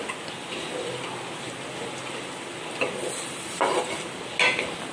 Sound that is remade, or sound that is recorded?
recorded